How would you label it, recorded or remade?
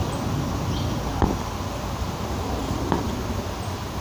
recorded